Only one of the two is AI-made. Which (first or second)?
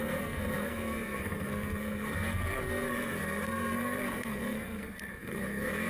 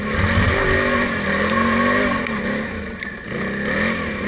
first